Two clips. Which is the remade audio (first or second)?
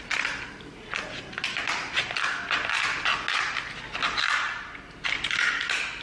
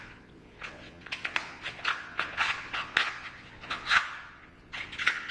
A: second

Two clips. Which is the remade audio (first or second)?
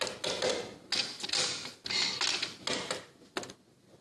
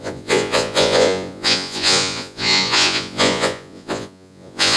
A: second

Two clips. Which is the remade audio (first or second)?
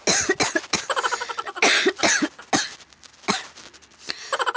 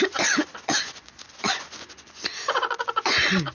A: second